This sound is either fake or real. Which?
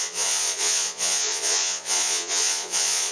fake